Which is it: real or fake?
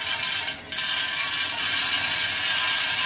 real